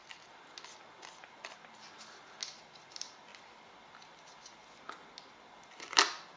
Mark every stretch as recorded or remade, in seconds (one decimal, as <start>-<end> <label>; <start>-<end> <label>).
0.0-6.4 recorded